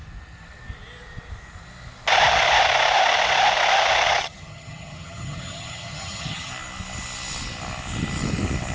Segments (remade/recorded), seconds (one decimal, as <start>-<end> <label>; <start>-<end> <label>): 0.0-4.2 recorded; 4.2-6.5 remade; 6.5-8.7 recorded